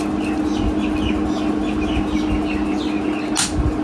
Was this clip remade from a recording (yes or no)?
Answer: no